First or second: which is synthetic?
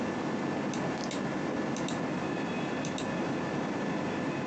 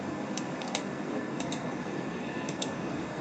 second